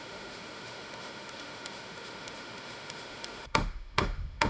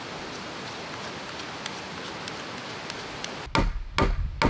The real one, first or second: second